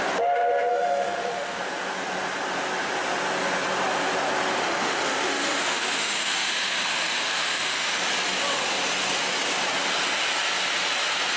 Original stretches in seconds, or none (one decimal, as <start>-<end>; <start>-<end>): 0.0-0.7; 1.6-4.6; 8.0-11.4